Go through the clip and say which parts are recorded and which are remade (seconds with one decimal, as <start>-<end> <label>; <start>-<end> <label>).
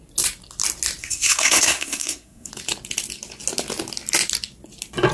0.0-1.0 recorded; 1.0-2.5 remade; 2.5-5.1 recorded